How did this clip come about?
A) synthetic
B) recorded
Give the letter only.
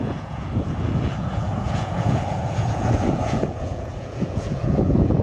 A